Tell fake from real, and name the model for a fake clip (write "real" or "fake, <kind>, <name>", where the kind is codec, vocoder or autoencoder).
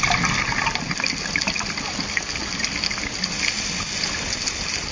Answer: real